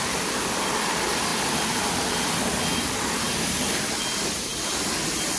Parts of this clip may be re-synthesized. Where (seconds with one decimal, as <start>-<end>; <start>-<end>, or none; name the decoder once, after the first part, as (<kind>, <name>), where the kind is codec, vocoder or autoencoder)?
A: 0.0-5.4 (vocoder, BigVGAN v2)